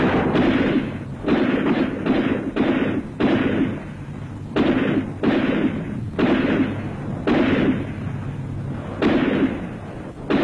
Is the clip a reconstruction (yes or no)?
yes